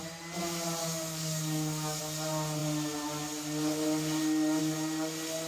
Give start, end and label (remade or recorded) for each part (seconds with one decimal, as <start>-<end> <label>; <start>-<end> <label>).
0.0-0.8 recorded; 0.8-2.0 remade; 2.0-5.5 recorded